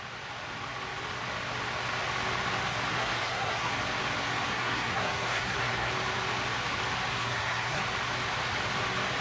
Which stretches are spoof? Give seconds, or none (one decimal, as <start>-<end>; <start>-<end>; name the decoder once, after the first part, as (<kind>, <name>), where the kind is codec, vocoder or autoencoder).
2.9-3.7 (codec, SNAC); 4.5-5.9; 7.1-7.8